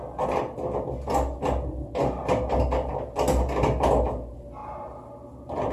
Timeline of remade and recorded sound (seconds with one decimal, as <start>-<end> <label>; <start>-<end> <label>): 0.0-4.6 recorded; 4.6-5.1 remade; 5.1-5.7 recorded